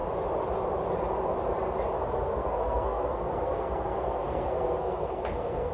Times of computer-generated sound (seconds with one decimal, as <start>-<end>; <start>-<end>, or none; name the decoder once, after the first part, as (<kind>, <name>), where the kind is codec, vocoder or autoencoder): 2.0-5.7 (codec, SNAC)